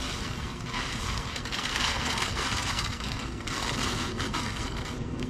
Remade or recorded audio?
remade